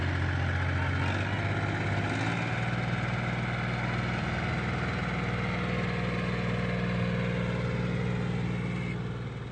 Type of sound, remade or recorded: recorded